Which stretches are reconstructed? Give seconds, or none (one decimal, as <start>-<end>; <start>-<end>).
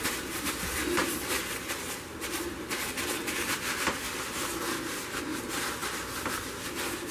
0.0-7.1